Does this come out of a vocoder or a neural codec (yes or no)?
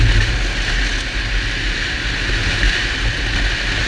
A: no